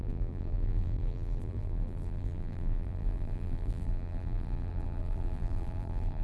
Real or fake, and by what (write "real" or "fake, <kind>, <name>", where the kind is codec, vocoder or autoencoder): fake, vocoder, BigVGAN v2